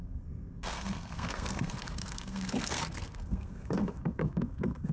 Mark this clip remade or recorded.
remade